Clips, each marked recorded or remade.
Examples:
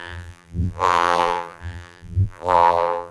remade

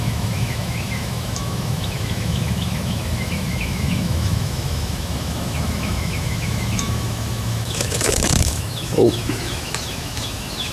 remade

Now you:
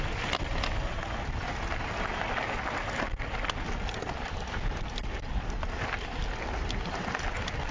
recorded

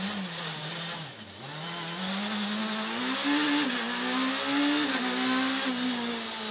recorded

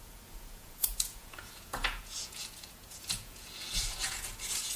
remade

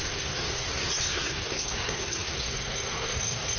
remade